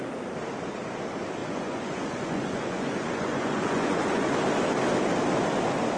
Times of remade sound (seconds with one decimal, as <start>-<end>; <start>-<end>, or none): 1.4-4.3